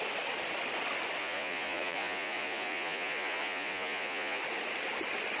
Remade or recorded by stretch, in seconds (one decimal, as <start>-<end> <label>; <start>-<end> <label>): 0.0-1.2 recorded; 1.2-4.4 remade; 4.4-5.4 recorded